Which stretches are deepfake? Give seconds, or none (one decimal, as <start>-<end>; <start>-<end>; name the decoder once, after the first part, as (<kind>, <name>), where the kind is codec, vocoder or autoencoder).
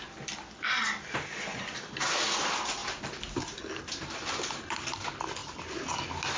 none